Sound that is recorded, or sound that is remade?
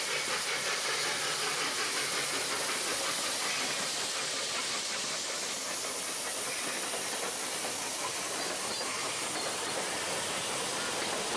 recorded